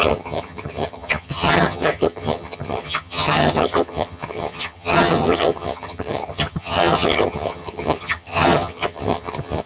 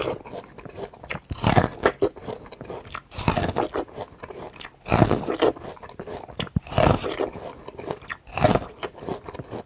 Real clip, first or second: second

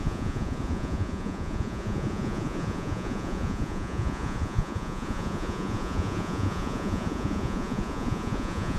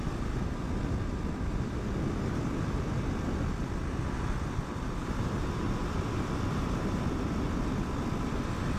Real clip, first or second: second